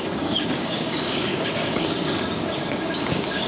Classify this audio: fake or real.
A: fake